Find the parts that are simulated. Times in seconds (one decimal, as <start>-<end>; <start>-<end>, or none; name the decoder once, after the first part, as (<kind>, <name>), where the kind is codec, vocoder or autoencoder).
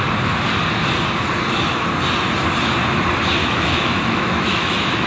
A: 3.4-5.1 (autoencoder, DAC-VAE)